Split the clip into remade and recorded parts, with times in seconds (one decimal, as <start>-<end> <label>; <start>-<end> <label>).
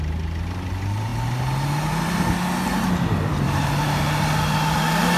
0.0-3.3 recorded; 3.3-4.0 remade; 4.0-5.2 recorded